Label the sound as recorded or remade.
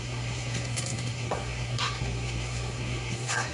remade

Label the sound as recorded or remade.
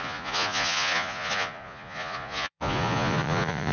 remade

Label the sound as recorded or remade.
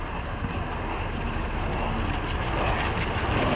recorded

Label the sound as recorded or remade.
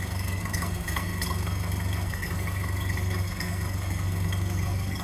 remade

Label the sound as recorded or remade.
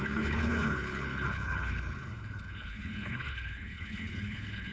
remade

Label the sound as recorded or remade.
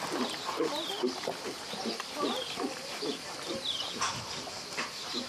recorded